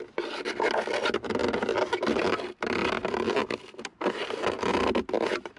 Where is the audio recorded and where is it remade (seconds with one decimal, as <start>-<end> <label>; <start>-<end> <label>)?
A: 0.0-5.6 recorded

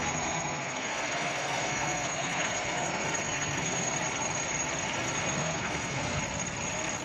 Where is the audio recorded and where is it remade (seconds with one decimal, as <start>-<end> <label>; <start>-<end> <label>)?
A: 0.0-3.9 remade; 3.9-5.4 recorded; 5.4-6.2 remade; 6.2-7.0 recorded

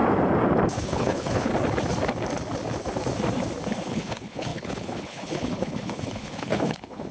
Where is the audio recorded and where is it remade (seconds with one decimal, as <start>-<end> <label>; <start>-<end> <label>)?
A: 0.0-0.7 recorded; 0.7-1.5 remade; 1.5-3.9 recorded; 3.9-7.1 remade

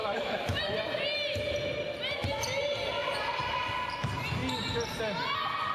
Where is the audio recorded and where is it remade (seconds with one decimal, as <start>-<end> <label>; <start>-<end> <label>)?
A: 0.0-0.6 remade; 0.6-5.7 recorded

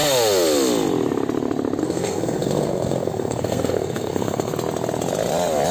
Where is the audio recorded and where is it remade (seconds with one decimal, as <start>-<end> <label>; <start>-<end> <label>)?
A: 0.0-1.8 recorded; 1.8-4.5 remade; 4.5-5.7 recorded

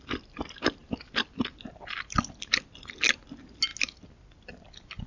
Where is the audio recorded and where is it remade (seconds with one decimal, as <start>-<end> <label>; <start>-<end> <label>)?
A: 0.0-5.1 recorded